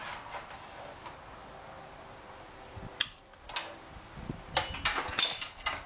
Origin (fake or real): real